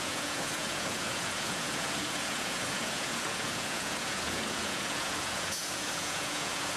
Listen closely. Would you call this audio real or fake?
fake